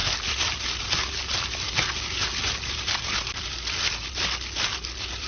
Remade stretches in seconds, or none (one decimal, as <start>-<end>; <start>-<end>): none